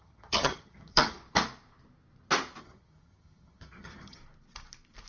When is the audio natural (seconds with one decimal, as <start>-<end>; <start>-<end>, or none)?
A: 1.2-2.6; 4.2-5.1